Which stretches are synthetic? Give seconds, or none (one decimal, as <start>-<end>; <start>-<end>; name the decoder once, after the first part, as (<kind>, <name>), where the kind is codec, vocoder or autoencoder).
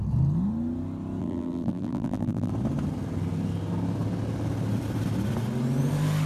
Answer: 1.2-2.5 (vocoder, BigVGAN v2)